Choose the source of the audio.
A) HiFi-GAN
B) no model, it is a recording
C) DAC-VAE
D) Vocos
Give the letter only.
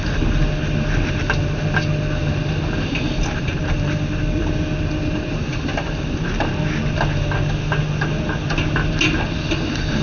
B